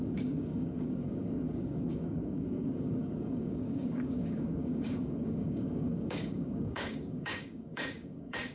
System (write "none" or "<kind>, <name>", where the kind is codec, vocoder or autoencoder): codec, DAC